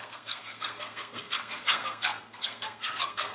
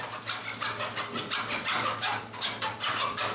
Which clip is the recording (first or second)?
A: second